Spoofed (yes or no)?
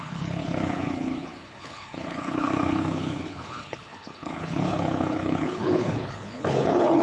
yes